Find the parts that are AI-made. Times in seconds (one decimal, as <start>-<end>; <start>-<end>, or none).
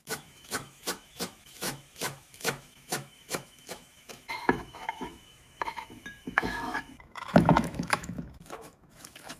0.0-9.4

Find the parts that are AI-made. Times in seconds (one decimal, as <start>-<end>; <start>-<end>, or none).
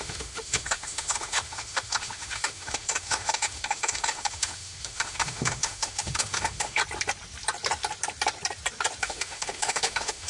0.0-6.8; 9.0-10.3